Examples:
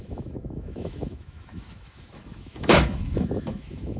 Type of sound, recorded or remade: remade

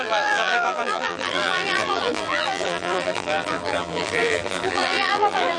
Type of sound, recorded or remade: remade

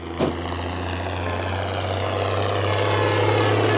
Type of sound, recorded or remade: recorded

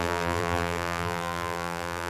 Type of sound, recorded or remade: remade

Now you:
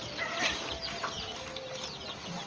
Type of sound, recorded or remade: recorded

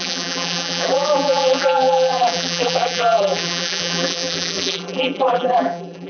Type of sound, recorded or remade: remade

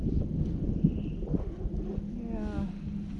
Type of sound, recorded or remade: recorded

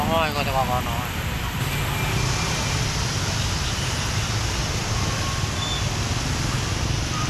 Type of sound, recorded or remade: recorded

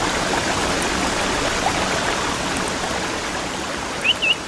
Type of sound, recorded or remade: recorded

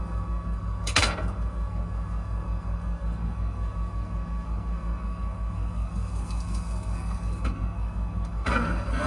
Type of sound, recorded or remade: remade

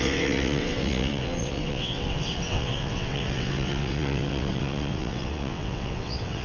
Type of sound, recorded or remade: remade